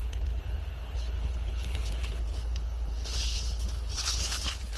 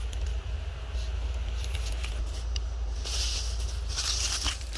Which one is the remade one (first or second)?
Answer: first